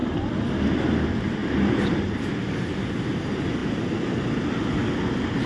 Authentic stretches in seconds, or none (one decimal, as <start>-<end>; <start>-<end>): 0.6-1.4; 2.8-5.5